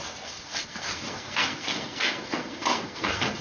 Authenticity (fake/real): fake